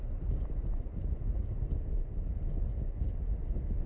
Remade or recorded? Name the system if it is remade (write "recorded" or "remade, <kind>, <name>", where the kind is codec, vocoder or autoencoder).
recorded